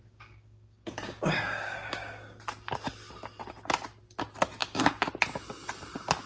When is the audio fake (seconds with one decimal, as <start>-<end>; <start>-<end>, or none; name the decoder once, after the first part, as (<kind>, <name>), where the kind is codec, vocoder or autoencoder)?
0.0-2.4 (codec, DAC); 4.6-5.1